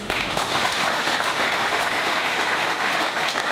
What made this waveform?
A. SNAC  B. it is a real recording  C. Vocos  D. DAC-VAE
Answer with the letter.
D